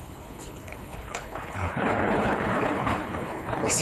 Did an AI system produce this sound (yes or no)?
yes